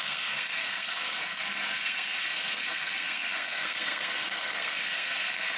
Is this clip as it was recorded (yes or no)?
no